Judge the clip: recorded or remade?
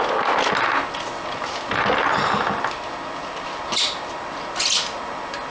recorded